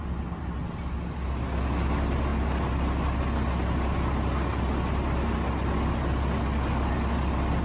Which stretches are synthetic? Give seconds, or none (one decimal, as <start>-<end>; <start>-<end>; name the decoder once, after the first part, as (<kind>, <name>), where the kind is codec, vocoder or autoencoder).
none